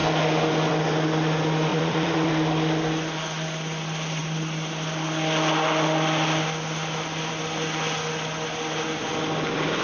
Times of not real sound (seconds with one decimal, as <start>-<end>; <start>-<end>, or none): 1.7-2.3